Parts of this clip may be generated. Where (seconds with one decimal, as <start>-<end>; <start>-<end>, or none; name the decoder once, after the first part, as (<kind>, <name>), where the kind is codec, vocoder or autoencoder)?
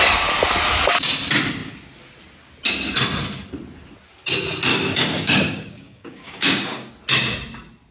4.7-6.9 (codec, DAC)